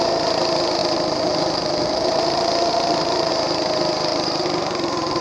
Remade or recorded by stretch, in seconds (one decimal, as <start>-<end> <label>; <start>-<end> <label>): 0.0-0.8 recorded; 0.8-3.3 remade; 3.3-4.1 recorded; 4.1-5.2 remade